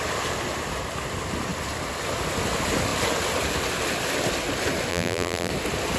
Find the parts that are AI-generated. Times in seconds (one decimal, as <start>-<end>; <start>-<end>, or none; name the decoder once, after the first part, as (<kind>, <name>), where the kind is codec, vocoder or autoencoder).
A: 4.9-5.5 (vocoder, BigVGAN v2)